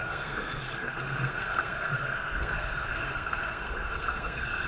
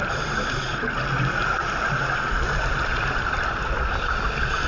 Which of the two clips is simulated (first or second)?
first